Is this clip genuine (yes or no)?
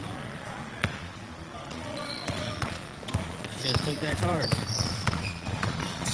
no